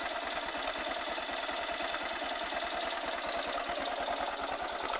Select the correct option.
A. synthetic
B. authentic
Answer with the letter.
B